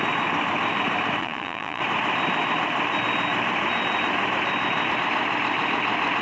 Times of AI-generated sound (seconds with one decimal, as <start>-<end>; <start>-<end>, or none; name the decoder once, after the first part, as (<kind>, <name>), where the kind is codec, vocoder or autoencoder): 1.2-1.8 (vocoder, Vocos)